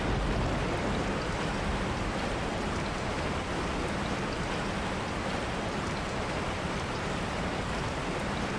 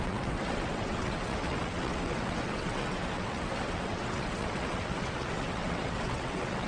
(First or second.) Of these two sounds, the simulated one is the second